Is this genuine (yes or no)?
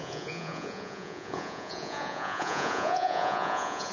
no